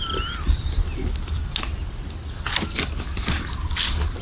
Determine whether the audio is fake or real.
real